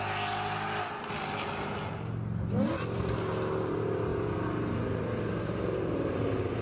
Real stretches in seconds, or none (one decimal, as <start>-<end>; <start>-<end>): 0.0-6.6

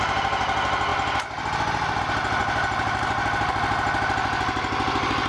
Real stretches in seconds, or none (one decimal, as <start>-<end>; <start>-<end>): 0.0-2.4; 3.5-5.3